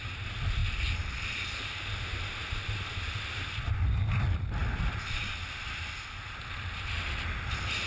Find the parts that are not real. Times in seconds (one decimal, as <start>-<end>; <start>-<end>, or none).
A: none